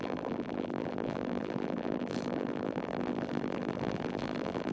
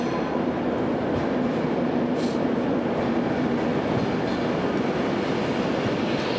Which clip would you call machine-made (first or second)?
first